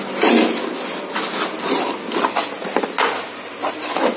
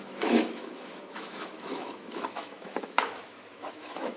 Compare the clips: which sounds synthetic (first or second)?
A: second